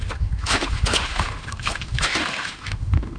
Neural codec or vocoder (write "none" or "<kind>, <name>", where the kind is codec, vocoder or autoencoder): autoencoder, DAC-VAE